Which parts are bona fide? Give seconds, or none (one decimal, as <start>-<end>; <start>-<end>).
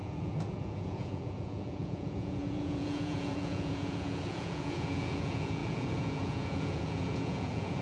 none